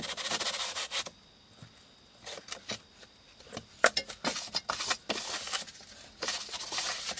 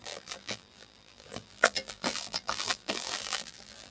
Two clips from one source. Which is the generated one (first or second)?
second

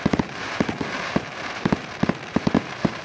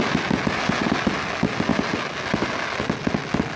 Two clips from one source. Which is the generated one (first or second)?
first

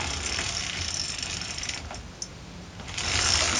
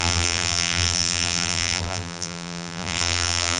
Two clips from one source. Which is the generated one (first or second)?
second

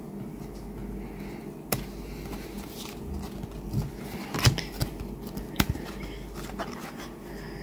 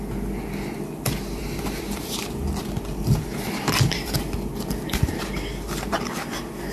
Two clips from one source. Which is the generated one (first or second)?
second